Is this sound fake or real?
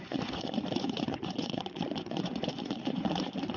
fake